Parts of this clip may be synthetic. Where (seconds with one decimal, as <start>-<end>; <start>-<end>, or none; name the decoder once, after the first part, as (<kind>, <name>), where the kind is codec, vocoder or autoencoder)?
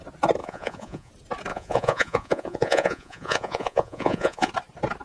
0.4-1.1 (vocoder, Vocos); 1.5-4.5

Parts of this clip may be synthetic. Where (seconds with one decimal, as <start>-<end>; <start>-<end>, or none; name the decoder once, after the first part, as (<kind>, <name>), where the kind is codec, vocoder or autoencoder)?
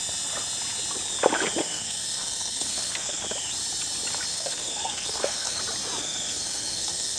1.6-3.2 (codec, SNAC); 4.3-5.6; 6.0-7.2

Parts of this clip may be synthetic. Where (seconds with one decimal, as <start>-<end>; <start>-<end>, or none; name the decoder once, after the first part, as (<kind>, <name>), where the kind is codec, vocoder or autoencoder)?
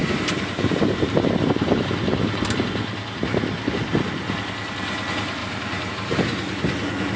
0.0-1.9 (vocoder, BigVGAN v2); 5.4-5.9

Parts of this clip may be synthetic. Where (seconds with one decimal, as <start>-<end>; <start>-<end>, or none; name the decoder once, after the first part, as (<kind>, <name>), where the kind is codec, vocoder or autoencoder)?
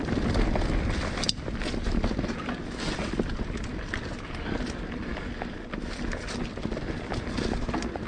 none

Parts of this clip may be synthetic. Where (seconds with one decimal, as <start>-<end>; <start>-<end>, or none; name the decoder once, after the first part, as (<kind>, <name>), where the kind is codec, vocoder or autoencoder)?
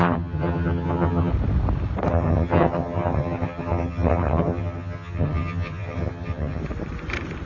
0.0-1.3 (vocoder, HiFi-GAN); 2.1-6.6